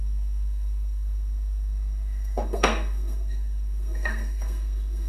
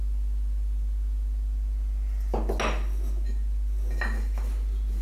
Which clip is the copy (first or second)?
first